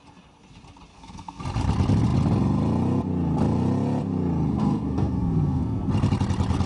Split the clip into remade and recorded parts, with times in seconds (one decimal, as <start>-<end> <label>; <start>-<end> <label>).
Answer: 0.0-0.9 recorded; 0.9-1.4 remade; 1.4-4.5 recorded; 4.5-5.9 remade; 5.9-6.7 recorded